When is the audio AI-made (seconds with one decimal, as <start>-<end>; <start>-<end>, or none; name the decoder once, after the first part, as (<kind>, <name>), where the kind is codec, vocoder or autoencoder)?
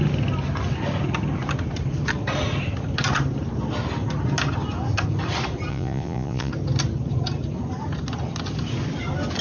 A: 5.7-6.5 (vocoder, Vocos)